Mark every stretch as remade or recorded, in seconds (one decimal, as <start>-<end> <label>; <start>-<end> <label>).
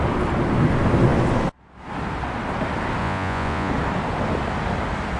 0.0-3.0 recorded; 3.0-3.7 remade; 3.7-5.2 recorded